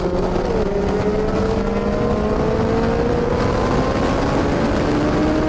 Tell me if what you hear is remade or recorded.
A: recorded